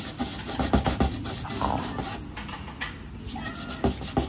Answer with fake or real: real